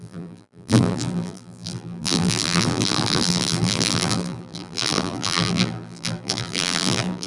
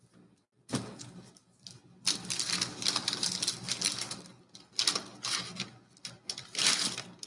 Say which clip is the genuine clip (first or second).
second